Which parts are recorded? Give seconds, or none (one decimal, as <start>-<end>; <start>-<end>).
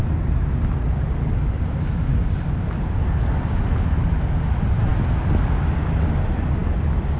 0.0-7.2